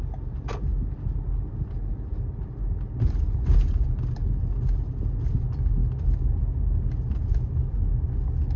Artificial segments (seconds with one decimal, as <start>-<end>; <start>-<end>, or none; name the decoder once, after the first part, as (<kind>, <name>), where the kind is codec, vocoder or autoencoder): none